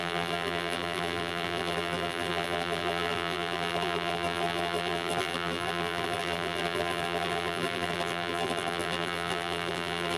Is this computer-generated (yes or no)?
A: yes